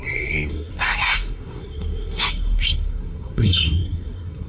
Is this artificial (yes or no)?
yes